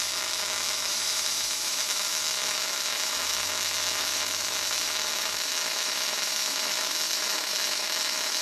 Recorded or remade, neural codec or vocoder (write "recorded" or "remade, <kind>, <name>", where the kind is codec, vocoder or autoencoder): remade, autoencoder, DAC-VAE